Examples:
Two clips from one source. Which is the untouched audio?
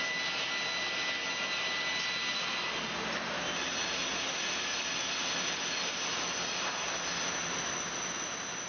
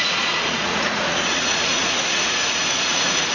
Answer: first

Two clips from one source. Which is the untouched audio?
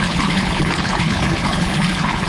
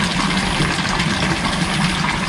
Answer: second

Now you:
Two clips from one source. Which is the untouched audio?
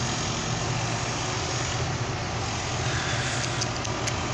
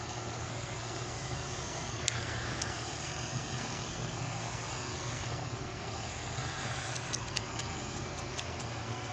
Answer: first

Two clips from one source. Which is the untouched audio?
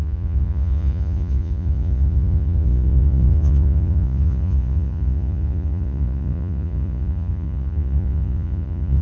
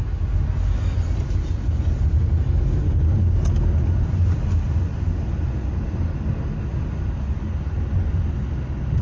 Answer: second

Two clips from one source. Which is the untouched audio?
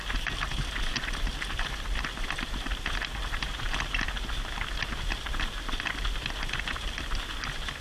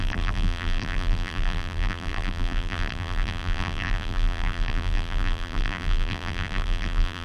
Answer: first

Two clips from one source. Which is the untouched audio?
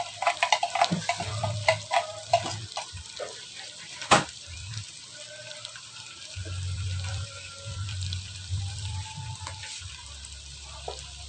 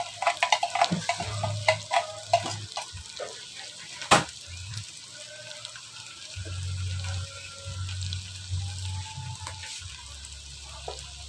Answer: second